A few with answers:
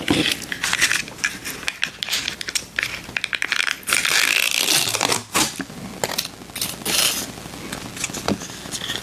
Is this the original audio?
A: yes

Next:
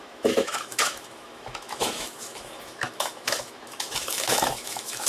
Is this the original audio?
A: no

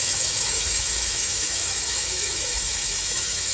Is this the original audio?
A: no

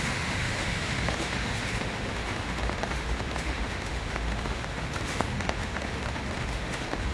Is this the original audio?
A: no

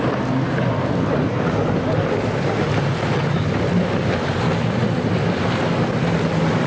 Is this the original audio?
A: yes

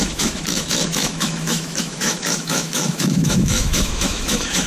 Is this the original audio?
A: no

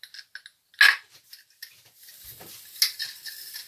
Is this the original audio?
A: yes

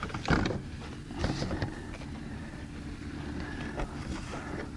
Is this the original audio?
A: yes